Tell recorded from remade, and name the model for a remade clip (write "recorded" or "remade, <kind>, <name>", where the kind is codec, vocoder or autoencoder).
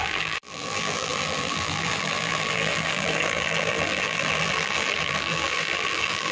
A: remade, vocoder, BigVGAN v2